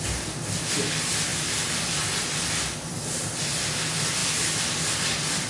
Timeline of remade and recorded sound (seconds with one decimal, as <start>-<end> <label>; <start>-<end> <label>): 0.0-5.5 recorded